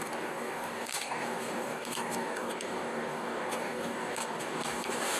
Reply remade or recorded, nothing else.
remade